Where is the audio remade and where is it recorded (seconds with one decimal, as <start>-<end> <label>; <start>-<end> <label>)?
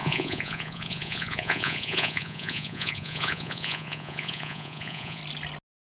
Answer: 0.0-5.2 remade; 5.2-5.8 recorded